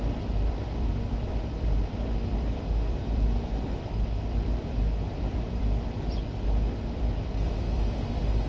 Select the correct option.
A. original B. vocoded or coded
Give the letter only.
B